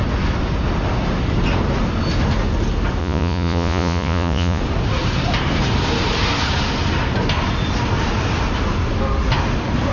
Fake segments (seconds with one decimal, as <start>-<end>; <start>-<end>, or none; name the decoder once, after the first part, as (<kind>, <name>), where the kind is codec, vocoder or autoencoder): 3.0-4.6 (vocoder, Vocos)